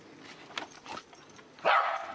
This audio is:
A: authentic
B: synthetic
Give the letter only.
A